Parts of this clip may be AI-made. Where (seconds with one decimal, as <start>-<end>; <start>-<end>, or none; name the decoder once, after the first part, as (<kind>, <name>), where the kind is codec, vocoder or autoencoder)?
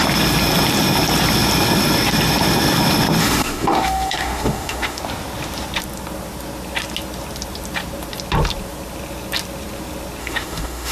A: 3.2-5.0 (autoencoder, DAC-VAE); 10.2-10.9